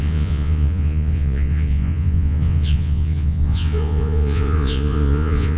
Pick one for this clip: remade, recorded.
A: remade